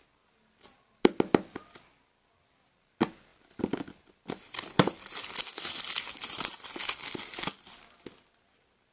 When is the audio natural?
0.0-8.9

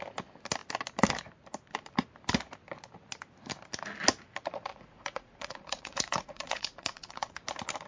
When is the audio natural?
0.0-4.7; 7.3-7.9

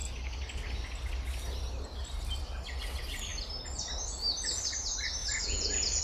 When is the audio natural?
0.0-5.2

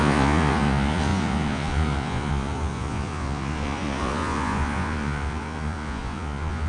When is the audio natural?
none

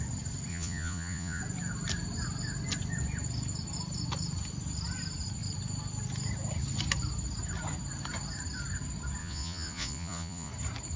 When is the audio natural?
0.0-0.5; 1.4-9.2; 10.5-11.0

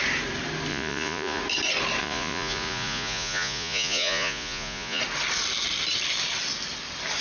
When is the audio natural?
0.0-0.7; 1.4-2.0; 5.0-7.2

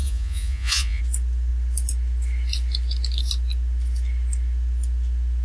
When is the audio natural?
1.0-5.4

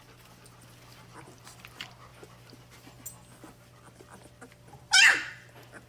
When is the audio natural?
0.0-5.9